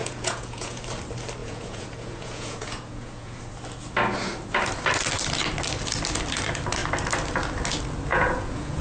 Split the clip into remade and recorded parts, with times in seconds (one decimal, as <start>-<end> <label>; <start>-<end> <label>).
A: 0.0-0.8 remade; 0.8-1.4 recorded; 1.4-3.4 remade; 3.4-8.1 recorded; 8.1-8.8 remade